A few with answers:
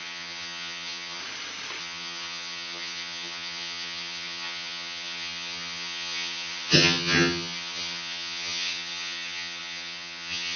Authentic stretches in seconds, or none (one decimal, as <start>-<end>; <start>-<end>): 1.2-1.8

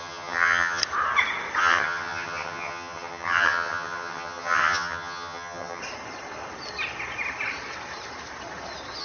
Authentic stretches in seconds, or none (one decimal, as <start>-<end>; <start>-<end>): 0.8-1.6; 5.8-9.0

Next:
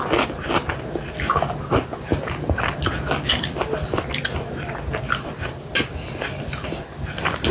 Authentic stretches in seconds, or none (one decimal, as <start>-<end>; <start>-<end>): 0.0-7.5

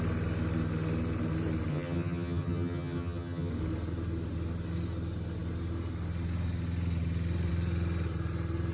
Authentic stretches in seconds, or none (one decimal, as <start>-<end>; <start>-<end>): 0.0-1.7; 3.5-8.7

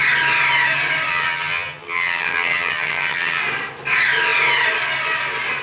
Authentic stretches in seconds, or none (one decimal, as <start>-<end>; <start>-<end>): 0.0-1.1; 3.4-5.6

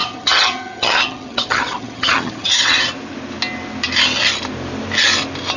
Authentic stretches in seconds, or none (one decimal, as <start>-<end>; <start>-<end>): 2.9-5.6

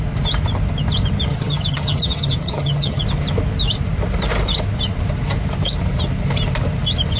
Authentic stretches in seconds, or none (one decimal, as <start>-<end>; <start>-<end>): 0.0-1.3; 3.0-7.2